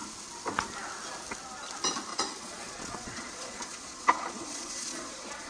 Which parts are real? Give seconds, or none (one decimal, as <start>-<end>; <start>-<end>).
0.0-2.1